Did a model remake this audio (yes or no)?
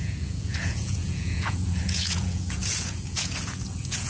yes